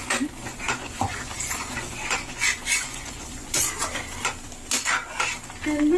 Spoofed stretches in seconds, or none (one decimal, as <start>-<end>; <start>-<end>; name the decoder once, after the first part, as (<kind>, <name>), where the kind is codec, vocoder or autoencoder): 0.0-3.6 (vocoder, Vocos)